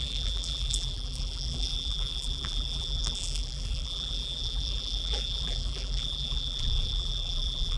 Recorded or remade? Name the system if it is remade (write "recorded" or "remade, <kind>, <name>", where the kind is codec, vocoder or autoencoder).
remade, vocoder, BigVGAN v2